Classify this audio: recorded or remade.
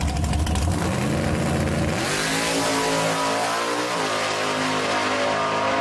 recorded